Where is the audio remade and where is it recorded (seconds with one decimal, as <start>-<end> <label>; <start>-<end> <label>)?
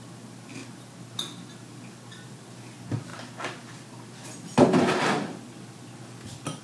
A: 0.0-6.6 recorded